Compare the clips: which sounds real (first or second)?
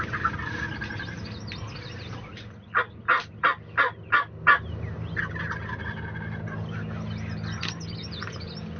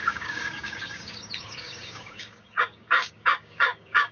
first